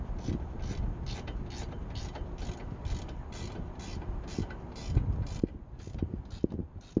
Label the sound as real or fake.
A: real